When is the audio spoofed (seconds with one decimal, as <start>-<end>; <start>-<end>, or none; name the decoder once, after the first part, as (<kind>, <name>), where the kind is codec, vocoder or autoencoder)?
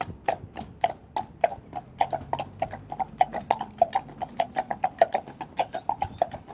none